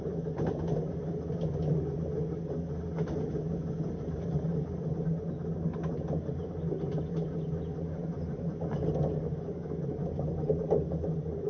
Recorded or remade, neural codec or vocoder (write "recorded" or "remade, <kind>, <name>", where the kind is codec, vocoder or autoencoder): recorded